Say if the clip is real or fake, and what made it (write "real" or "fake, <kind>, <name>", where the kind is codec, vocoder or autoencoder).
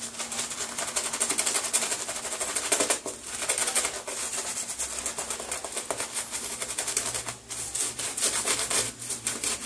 real